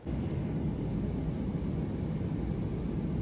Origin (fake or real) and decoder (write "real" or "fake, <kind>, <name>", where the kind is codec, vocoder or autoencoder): real